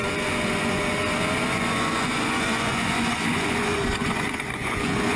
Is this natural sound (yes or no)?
no